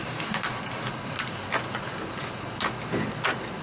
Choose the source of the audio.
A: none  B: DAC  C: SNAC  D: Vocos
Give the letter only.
A